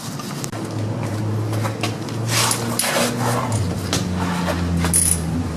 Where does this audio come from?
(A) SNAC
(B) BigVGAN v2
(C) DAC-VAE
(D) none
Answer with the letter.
D